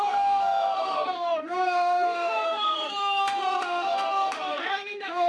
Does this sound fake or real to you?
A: fake